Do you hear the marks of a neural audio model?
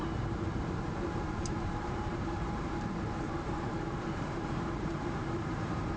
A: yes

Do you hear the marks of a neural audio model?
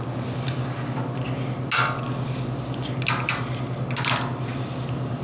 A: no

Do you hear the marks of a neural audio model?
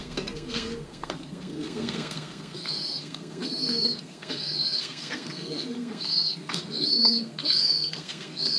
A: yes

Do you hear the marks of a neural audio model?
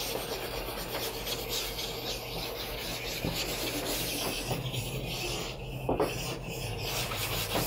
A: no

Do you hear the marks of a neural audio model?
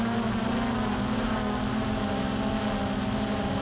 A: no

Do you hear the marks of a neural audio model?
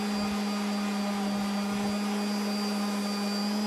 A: no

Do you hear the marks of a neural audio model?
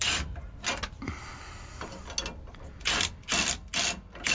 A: no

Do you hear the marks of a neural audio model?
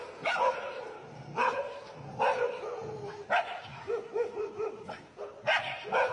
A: no